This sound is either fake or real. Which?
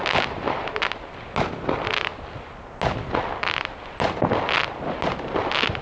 real